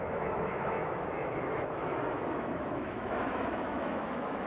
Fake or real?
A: fake